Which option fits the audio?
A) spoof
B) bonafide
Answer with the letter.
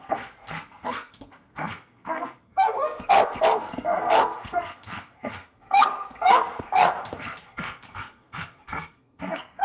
A